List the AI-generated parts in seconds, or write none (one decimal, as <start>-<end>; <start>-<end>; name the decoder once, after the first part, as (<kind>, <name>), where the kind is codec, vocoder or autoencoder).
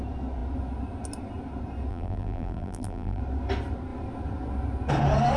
1.9-3.2 (vocoder, BigVGAN v2)